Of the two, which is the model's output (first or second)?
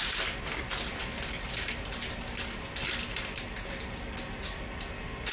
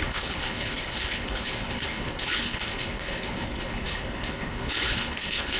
second